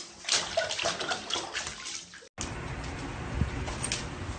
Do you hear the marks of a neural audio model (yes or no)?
no